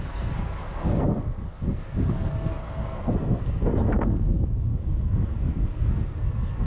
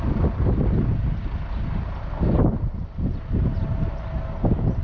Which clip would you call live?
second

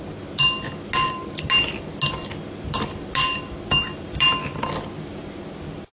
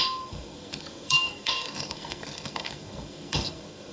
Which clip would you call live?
first